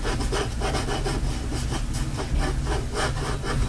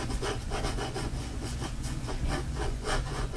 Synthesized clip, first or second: second